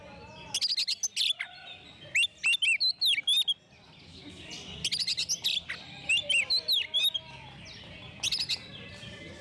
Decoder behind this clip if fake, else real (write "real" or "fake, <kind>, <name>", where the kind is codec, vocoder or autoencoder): real